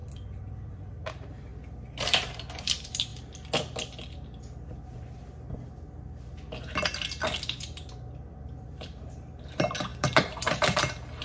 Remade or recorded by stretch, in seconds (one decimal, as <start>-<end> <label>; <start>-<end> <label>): 0.0-1.5 remade; 1.5-2.1 recorded; 2.1-3.1 remade; 3.1-8.4 recorded; 8.4-11.2 remade